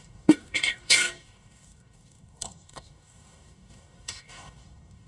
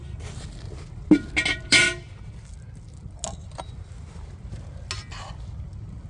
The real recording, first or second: second